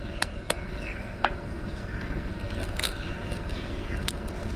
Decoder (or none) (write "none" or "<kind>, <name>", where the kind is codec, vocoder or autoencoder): codec, SNAC